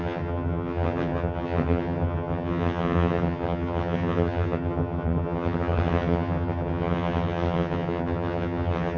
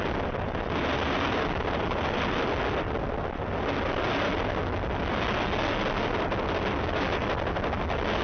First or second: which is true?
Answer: second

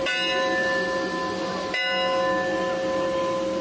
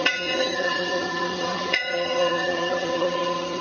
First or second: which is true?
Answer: first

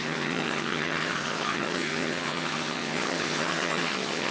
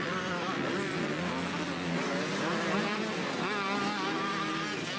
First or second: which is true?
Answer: second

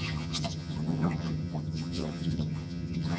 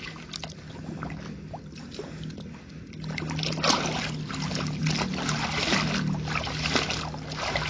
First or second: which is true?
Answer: second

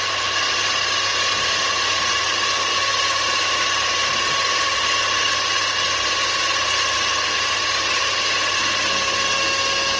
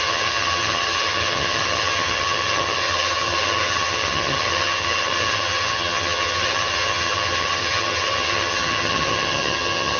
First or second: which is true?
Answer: first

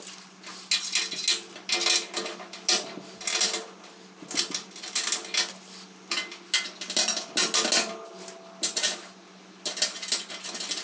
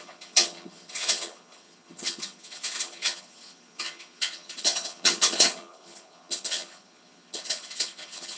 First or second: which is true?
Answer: first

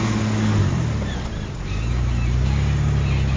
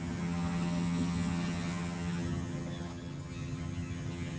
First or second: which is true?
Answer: first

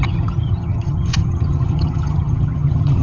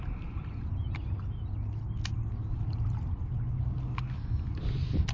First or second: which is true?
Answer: second